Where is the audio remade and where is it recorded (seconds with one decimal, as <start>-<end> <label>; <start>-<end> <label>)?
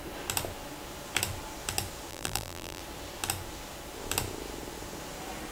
0.0-2.1 recorded; 2.1-2.8 remade; 2.8-5.5 recorded